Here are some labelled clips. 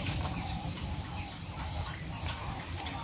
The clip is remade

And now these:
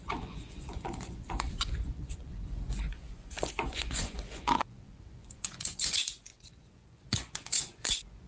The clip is remade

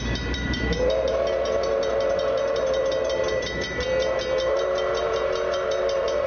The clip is remade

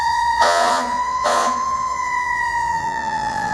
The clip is remade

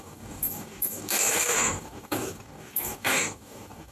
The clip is remade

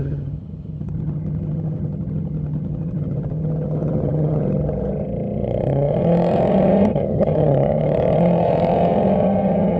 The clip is remade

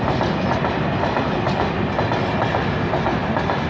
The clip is recorded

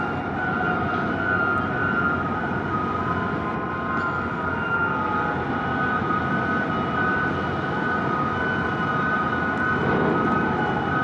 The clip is recorded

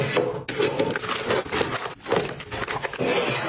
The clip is recorded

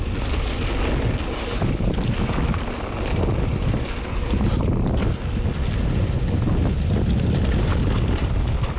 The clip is recorded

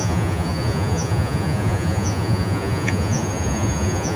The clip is remade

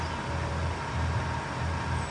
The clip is recorded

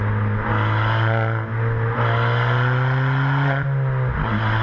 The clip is recorded